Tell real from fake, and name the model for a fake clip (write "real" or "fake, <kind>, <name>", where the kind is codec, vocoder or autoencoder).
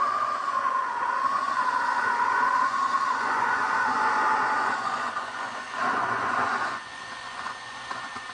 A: fake, vocoder, Vocos